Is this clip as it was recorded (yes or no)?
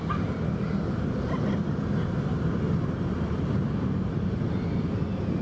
yes